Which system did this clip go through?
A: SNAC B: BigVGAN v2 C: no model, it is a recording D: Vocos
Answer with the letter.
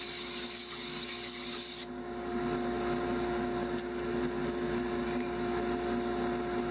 C